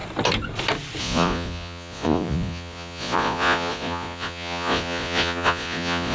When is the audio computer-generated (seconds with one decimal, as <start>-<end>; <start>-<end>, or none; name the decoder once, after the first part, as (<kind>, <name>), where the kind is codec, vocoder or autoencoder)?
1.0-6.1 (vocoder, Vocos)